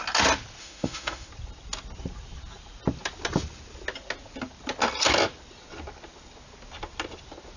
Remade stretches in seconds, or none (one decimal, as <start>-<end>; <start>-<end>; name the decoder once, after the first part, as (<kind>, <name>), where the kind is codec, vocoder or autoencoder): 0.6-1.3 (autoencoder, DAC-VAE)